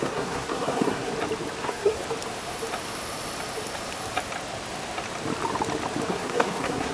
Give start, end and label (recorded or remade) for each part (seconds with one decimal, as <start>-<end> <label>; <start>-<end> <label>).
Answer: 0.0-1.1 remade; 1.1-1.6 recorded; 1.6-2.0 remade; 2.0-6.1 recorded; 6.1-6.9 remade